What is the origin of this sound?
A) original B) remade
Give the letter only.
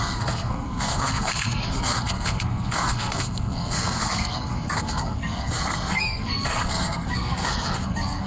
B